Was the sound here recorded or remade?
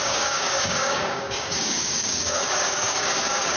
remade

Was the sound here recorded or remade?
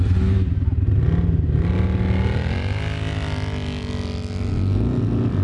recorded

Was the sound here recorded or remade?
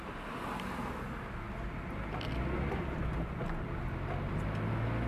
recorded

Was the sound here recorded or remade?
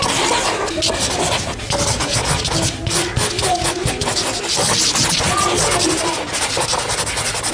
recorded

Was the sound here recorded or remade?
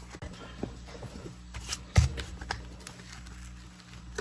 recorded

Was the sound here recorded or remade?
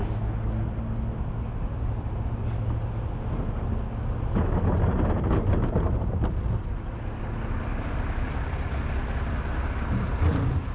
recorded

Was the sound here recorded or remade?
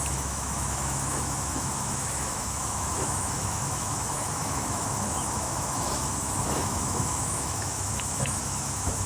remade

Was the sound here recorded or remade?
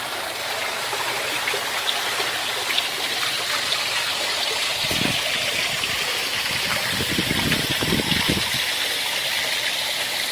recorded